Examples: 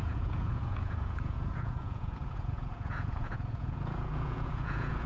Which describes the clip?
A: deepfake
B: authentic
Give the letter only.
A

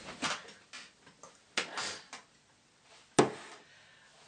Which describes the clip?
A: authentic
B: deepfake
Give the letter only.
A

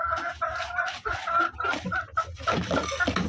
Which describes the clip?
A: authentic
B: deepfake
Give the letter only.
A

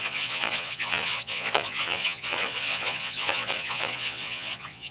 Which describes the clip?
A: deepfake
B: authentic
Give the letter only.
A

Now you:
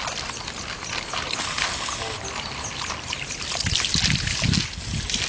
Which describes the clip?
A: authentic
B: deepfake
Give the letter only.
A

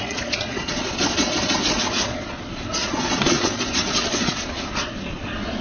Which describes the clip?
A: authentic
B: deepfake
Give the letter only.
B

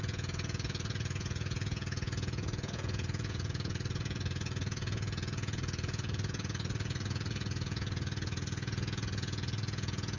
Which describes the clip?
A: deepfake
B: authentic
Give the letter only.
A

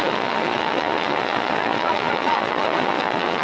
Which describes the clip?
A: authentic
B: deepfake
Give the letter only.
B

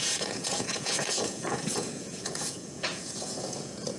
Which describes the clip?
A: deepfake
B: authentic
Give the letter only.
A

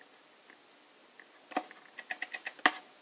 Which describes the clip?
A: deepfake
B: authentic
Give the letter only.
B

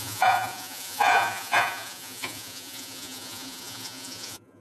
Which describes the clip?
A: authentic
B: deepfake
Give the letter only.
B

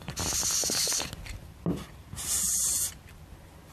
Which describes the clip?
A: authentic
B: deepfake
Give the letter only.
A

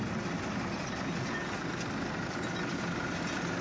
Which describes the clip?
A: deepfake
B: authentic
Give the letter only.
B